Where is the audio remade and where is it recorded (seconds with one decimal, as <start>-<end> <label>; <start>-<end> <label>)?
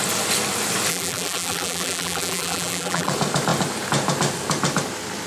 0.0-0.9 recorded; 0.9-3.1 remade; 3.1-5.3 recorded